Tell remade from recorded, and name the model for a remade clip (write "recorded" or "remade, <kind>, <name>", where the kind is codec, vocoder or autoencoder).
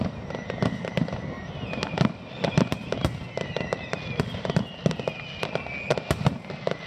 recorded